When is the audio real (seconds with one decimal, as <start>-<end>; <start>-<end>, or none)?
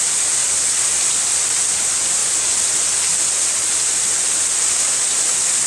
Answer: 0.0-0.4; 1.8-5.7